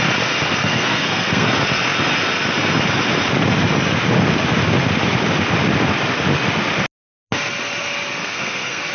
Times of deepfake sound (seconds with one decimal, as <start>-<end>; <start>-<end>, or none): 0.6-1.5; 8.2-8.9

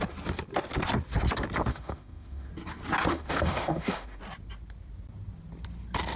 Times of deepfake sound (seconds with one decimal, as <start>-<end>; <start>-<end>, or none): 1.7-2.5; 3.1-4.2

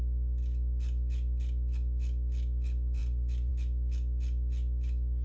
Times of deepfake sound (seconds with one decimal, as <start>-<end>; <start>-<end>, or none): none

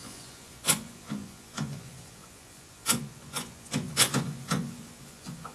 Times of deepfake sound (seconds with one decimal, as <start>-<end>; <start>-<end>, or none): 0.0-5.5

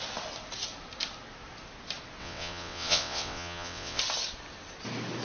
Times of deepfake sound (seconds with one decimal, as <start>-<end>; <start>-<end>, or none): 2.2-4.0

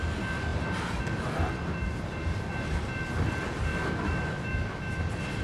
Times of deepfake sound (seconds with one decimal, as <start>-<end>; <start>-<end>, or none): 3.7-5.0

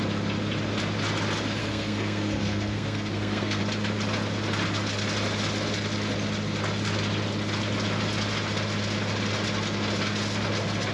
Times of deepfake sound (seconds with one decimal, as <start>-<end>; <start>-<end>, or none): 1.6-3.6

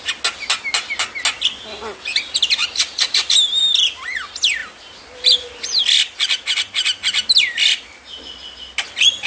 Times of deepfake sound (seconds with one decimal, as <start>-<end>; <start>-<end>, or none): none